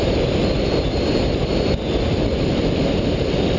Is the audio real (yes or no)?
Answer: yes